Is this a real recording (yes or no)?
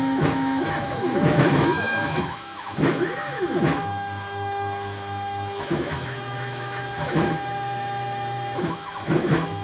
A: no